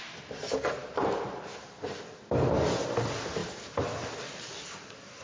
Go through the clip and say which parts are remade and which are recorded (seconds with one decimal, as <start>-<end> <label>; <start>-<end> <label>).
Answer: 0.0-5.2 recorded